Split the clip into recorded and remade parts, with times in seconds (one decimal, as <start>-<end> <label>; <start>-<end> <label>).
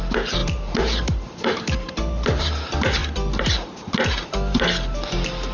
0.0-0.4 recorded; 0.4-2.5 remade; 2.5-5.5 recorded